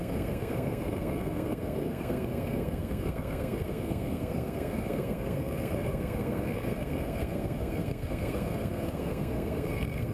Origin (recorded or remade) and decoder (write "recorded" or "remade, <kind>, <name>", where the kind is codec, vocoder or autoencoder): remade, codec, SNAC